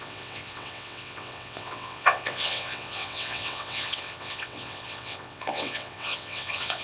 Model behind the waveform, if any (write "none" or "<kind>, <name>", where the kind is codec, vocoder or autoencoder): vocoder, WaveNeXt